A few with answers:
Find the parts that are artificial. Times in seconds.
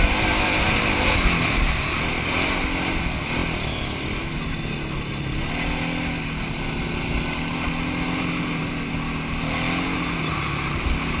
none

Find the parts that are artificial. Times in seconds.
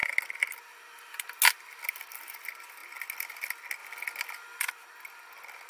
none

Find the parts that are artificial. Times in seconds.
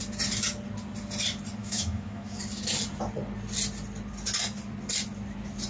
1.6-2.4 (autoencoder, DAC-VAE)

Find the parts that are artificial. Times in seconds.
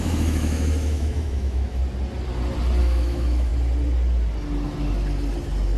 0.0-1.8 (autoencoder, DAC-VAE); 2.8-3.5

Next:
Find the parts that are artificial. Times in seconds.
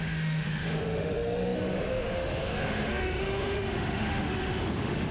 0.0-5.1 (autoencoder, DAC-VAE)